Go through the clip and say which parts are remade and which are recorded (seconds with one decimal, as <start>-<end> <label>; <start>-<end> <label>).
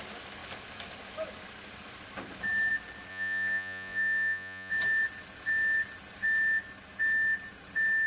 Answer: 0.0-3.1 recorded; 3.1-4.7 remade; 4.7-8.1 recorded